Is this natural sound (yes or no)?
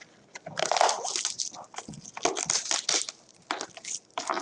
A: yes